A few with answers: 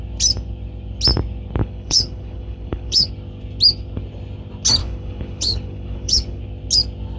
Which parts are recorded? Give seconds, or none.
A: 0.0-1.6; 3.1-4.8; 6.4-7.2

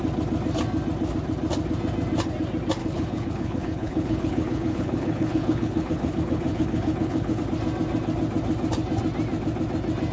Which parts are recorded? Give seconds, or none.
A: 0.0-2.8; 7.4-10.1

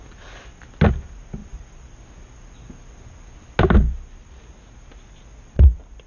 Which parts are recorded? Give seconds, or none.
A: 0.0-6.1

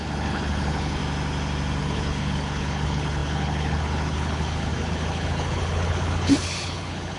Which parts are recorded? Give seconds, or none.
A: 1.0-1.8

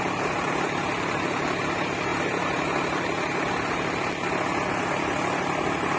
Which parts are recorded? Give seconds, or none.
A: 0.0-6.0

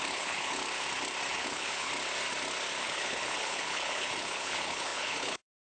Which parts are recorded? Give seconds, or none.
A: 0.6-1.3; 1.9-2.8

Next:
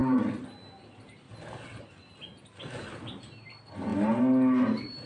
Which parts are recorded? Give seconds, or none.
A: 0.0-5.1

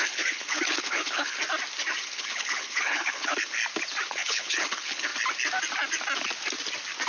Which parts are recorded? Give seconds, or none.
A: 1.4-2.0; 3.6-4.1; 5.1-7.1